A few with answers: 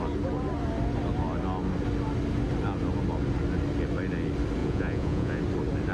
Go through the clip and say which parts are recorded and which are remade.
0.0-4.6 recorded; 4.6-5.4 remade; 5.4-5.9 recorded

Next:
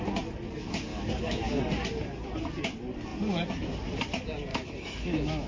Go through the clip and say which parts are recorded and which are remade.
0.0-0.9 recorded; 0.9-1.6 remade; 1.6-4.5 recorded; 4.5-5.5 remade